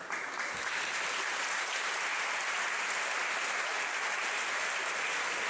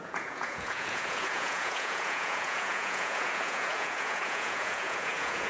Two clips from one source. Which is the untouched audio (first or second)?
first